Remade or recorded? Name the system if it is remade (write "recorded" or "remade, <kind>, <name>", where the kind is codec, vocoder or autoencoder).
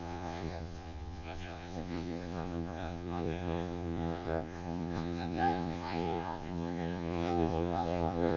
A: remade, vocoder, Vocos